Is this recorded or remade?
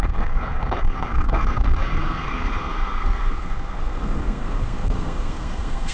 remade